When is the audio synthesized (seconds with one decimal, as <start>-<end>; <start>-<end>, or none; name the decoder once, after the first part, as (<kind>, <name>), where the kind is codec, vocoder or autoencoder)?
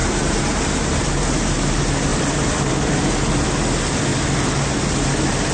0.0-1.3 (vocoder, BigVGAN v2); 2.1-2.7